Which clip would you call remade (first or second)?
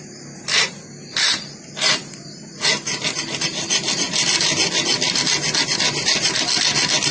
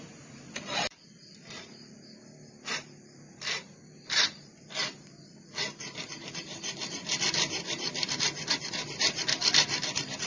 second